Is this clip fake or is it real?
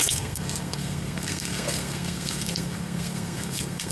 fake